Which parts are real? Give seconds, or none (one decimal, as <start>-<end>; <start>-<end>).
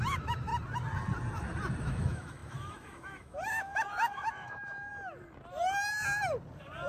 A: 0.5-1.8; 4.9-6.9